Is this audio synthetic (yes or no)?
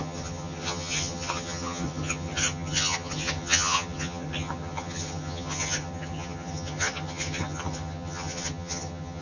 yes